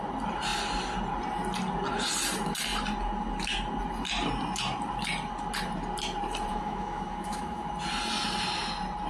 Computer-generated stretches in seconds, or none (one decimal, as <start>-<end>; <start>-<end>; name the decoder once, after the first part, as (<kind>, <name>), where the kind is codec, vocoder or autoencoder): 6.5-7.7 (autoencoder, DAC-VAE)